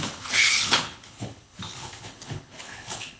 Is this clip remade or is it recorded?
remade